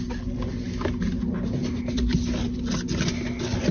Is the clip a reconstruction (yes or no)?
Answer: no